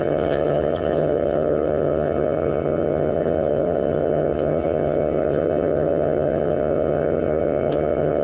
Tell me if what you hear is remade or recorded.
remade